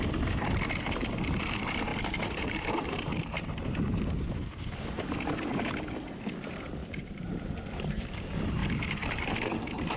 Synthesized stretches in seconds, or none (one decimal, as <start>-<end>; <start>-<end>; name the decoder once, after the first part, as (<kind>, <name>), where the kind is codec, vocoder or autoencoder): 1.9-4.6 (vocoder, BigVGAN v2); 6.8-8.0; 8.6-9.2